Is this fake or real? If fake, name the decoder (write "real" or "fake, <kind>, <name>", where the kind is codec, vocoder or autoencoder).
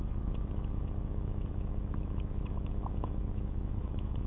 fake, autoencoder, DAC-VAE